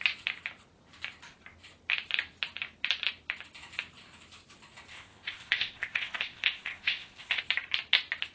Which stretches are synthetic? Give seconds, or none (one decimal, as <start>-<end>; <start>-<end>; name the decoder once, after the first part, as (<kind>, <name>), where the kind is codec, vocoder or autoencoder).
4.9-7.4 (codec, ZipCodec)